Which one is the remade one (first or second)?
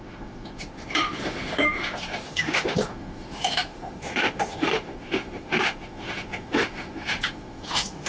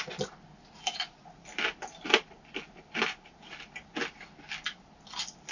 first